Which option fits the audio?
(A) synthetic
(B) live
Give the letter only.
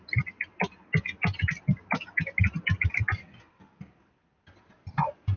B